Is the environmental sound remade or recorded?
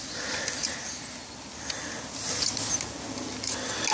recorded